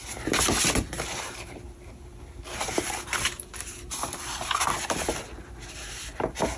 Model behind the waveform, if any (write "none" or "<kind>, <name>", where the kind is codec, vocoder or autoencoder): none